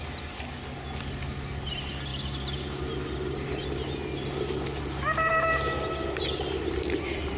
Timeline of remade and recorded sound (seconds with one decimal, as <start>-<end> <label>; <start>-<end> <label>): 0.0-7.4 recorded